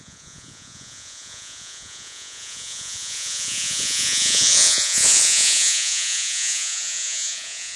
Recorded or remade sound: remade